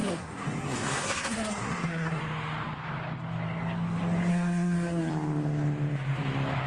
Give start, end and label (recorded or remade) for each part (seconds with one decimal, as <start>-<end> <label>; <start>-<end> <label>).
0.0-2.2 remade; 2.2-4.3 recorded; 4.3-5.1 remade; 5.1-6.7 recorded